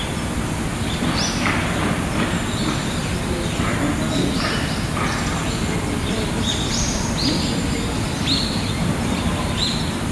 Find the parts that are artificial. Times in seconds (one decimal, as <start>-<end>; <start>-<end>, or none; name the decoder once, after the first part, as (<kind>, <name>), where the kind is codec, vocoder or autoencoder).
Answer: none

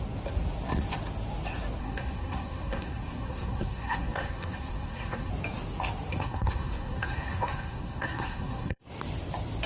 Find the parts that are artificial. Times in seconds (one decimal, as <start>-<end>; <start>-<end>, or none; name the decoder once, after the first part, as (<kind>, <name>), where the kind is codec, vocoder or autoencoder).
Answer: 1.8-5.3 (codec, SNAC); 6.1-8.8

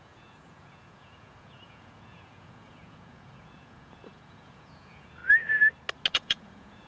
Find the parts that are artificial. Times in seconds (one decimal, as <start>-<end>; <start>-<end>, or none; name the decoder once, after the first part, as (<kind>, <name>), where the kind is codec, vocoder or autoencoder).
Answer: 0.0-5.2 (vocoder, Vocos); 6.1-6.9

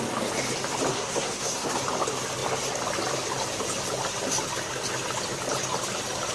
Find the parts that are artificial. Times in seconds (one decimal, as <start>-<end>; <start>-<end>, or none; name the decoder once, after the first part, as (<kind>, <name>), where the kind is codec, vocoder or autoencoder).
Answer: 0.9-1.8 (codec, SNAC)

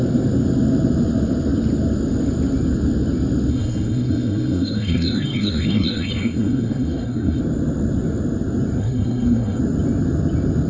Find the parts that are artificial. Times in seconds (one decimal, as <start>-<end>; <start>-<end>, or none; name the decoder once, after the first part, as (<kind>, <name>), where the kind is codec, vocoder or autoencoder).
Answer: 3.5-7.4 (codec, SNAC); 8.8-9.6

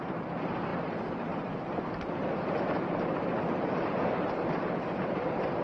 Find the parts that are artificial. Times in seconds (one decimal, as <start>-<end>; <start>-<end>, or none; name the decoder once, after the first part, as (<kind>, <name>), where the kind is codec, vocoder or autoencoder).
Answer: none

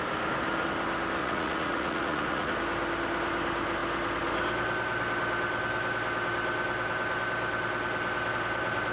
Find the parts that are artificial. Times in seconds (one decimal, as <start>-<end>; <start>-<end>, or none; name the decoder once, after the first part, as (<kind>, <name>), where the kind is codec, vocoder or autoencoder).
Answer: 1.2-2.5 (vocoder, Vocos)